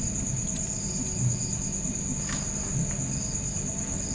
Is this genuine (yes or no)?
yes